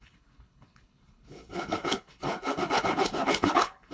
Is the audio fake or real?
fake